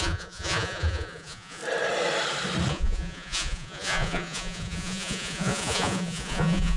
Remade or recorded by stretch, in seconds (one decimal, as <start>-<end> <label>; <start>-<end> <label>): 0.0-1.6 remade; 1.6-2.7 recorded; 2.7-6.8 remade